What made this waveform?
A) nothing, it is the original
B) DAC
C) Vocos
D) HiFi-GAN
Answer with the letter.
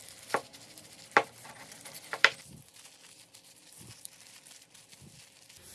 A